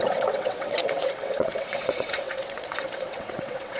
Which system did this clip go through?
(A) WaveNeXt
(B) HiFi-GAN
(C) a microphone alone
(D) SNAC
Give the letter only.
A